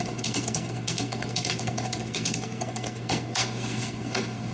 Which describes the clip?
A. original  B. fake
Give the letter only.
B